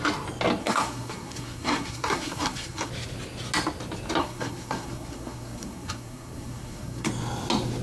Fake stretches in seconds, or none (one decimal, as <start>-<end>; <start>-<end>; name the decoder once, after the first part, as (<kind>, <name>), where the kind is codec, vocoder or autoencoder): 0.6-2.9 (codec, SNAC); 4.2-7.1